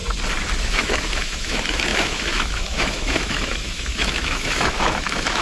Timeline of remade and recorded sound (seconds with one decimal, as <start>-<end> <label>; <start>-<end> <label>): 0.0-0.6 recorded; 0.6-5.4 remade